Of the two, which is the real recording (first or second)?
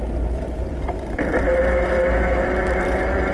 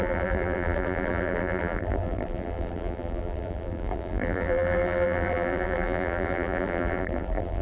first